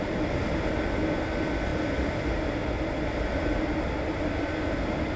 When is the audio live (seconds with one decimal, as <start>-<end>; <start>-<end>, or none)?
0.0-5.2